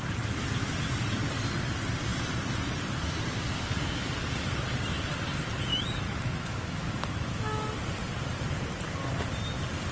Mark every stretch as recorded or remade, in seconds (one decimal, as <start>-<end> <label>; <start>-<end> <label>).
0.0-5.7 recorded; 5.7-7.7 remade; 7.7-9.9 recorded